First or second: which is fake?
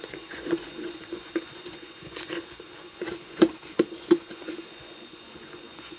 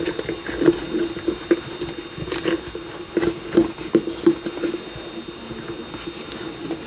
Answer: first